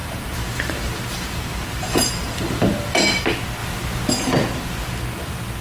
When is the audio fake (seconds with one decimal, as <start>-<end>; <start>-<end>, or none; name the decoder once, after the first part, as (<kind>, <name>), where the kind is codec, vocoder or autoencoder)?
0.0-3.2 (vocoder, BigVGAN v2)